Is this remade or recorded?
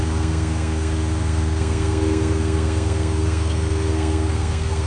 remade